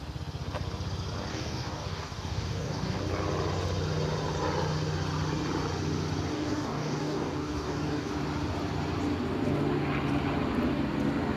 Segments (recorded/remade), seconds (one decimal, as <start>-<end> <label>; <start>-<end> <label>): 0.0-1.3 recorded; 1.3-3.0 remade; 3.0-6.3 recorded; 6.3-8.1 remade; 8.1-11.4 recorded